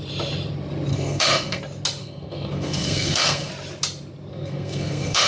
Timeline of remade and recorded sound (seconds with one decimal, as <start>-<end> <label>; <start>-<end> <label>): 0.0-0.9 recorded; 0.9-1.6 remade; 1.6-2.0 recorded; 2.0-3.5 remade; 3.5-4.3 recorded; 4.3-5.3 remade